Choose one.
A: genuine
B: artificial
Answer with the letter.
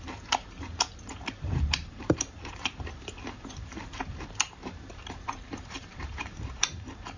B